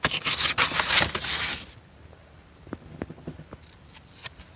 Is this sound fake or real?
real